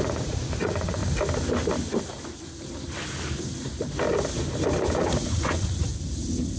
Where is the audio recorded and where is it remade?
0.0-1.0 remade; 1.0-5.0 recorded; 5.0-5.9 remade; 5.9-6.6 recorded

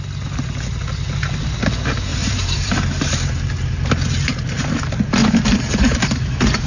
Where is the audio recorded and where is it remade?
0.0-2.1 recorded; 2.1-4.8 remade; 4.8-5.2 recorded; 5.2-6.7 remade

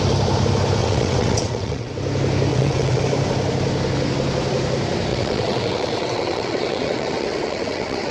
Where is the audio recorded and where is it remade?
0.0-0.8 recorded; 0.8-1.9 remade; 1.9-2.5 recorded; 2.5-3.0 remade; 3.0-5.1 recorded; 5.1-8.1 remade

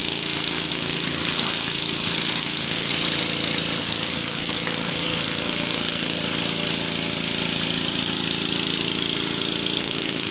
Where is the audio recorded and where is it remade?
0.0-2.9 remade; 2.9-3.8 recorded; 3.8-6.2 remade; 6.2-9.8 recorded; 9.8-10.3 remade

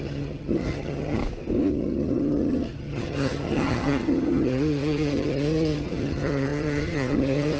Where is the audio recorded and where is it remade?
0.0-1.2 remade; 1.2-1.7 recorded; 1.7-7.6 remade